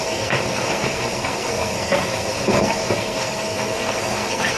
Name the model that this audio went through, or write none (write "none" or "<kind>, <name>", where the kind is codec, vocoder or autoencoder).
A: codec, SNAC